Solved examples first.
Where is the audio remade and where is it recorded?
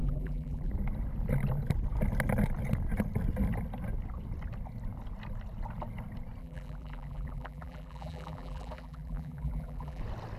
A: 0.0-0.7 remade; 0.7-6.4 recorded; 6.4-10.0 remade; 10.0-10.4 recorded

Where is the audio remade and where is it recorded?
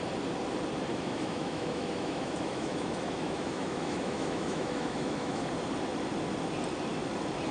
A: 0.0-0.9 recorded; 0.9-5.4 remade; 5.4-7.5 recorded